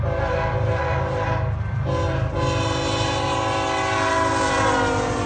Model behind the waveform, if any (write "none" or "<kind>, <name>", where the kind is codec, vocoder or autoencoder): none